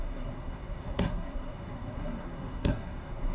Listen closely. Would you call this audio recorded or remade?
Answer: remade